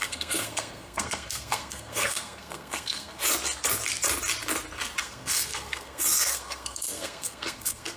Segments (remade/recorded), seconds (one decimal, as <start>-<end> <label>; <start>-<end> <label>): 0.0-3.2 remade; 3.2-5.0 recorded; 5.0-8.0 remade

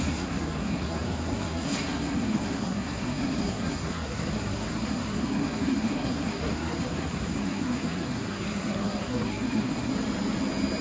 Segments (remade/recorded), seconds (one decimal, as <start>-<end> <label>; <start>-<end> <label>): 0.0-9.9 remade; 9.9-10.8 recorded

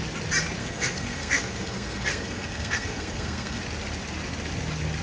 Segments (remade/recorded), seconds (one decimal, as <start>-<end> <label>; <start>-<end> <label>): 0.0-0.6 recorded; 0.6-3.6 remade; 3.6-5.0 recorded

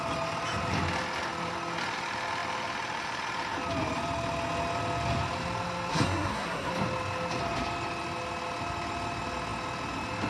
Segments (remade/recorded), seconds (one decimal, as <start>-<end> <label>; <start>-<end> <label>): 0.0-5.9 recorded; 5.9-6.7 remade; 6.7-10.3 recorded

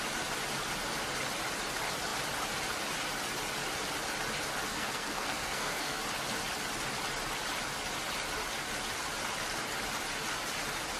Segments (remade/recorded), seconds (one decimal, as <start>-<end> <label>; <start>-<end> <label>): 0.0-4.7 recorded; 4.7-6.0 remade; 6.0-11.0 recorded